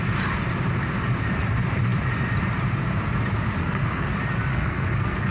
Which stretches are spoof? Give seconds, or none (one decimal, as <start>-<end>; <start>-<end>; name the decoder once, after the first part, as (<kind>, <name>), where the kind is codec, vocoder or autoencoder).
3.6-4.1 (codec, SNAC); 4.5-5.3